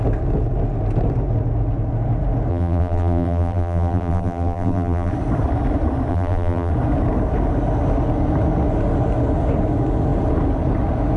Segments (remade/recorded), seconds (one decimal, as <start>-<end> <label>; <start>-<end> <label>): 0.0-2.5 recorded; 2.5-5.1 remade; 5.1-6.1 recorded; 6.1-6.7 remade; 6.7-11.2 recorded